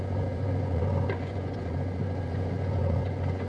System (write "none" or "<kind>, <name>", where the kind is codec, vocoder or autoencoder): vocoder, Vocos